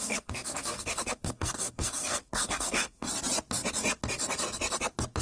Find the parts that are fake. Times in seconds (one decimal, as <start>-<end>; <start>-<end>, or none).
0.0-3.1